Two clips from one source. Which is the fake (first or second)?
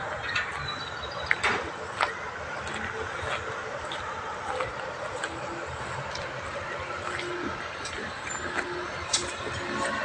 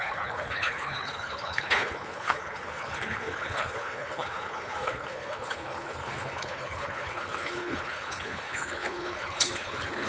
second